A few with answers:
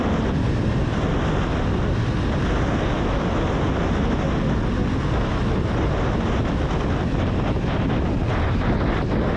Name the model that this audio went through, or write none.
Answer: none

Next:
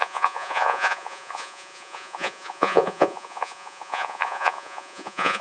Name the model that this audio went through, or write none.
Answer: vocoder, Vocos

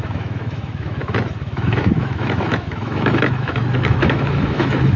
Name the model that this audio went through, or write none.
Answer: autoencoder, DAC-VAE